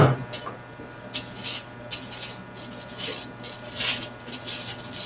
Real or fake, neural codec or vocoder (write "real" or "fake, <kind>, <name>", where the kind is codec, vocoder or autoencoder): fake, vocoder, BigVGAN v2